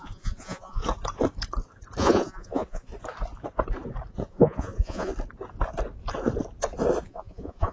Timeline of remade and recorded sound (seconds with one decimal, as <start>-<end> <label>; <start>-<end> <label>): 0.0-0.8 remade; 0.8-2.0 recorded; 2.0-2.9 remade; 2.9-4.3 recorded; 4.3-5.1 remade; 5.1-7.0 recorded; 7.0-7.7 remade